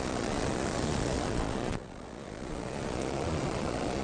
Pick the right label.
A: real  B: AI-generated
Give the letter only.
B